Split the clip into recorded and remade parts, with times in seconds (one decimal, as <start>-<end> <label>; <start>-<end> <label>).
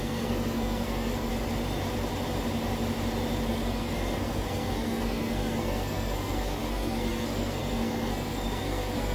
0.0-1.3 remade; 1.3-3.5 recorded; 3.5-9.1 remade